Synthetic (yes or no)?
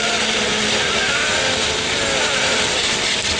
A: yes